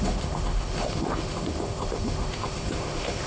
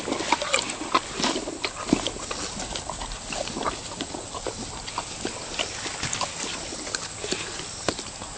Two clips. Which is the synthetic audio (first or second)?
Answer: first